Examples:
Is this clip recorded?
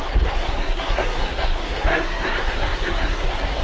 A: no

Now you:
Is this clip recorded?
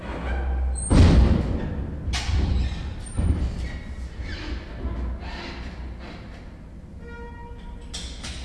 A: yes